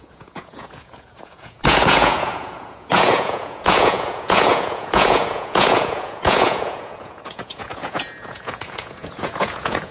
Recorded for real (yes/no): no